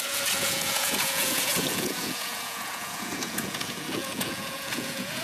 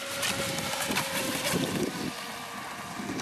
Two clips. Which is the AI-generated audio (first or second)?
first